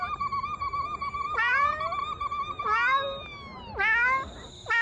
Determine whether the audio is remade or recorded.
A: recorded